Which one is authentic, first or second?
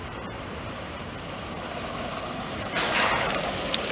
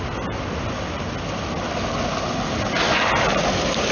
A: second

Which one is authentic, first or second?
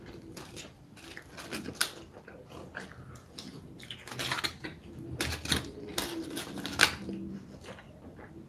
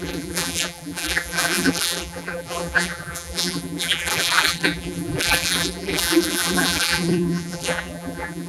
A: first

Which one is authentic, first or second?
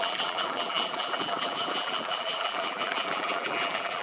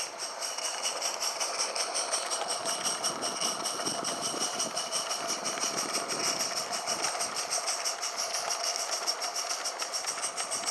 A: second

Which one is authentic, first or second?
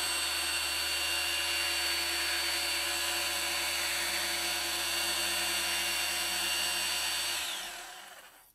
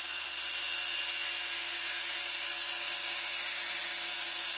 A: first